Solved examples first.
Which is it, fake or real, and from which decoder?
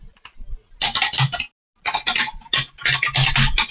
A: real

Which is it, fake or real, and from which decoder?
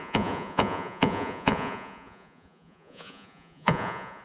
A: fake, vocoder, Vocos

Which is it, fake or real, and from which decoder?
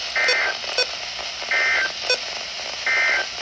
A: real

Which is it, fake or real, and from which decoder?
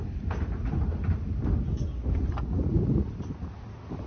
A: real